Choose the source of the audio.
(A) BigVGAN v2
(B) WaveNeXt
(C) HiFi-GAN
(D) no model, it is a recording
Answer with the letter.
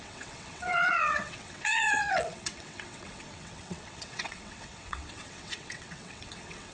B